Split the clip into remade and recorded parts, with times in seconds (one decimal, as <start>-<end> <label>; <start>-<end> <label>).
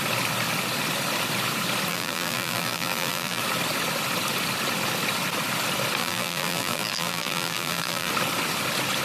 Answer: 0.0-1.9 recorded; 1.9-3.4 remade; 3.4-6.0 recorded; 6.0-8.1 remade; 8.1-9.0 recorded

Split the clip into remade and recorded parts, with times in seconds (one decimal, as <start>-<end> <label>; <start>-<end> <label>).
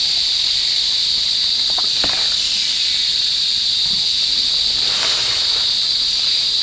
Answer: 0.0-3.0 remade; 3.0-6.0 recorded; 6.0-6.6 remade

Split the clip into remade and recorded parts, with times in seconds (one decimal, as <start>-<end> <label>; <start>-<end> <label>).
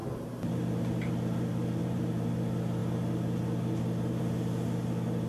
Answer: 0.0-1.1 remade; 1.1-1.8 recorded; 1.8-2.3 remade; 2.3-5.3 recorded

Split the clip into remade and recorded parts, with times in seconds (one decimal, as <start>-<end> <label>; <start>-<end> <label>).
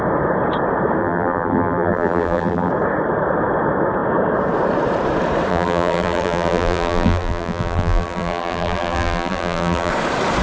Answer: 0.0-1.0 recorded; 1.0-2.7 remade; 2.7-5.5 recorded; 5.5-9.9 remade; 9.9-10.4 recorded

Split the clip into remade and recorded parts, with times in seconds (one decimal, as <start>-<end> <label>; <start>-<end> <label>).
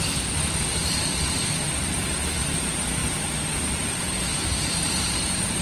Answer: 0.0-3.0 remade; 3.0-3.6 recorded; 3.6-5.6 remade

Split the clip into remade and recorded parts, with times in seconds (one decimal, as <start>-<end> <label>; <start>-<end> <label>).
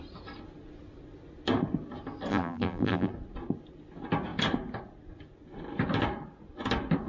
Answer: 0.0-2.3 recorded; 2.3-3.1 remade; 3.1-7.1 recorded